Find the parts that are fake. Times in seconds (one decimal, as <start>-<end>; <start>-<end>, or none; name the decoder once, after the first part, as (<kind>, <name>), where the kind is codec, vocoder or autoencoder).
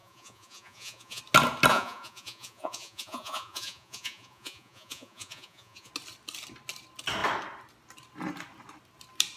0.0-1.2 (vocoder, Vocos); 1.7-5.9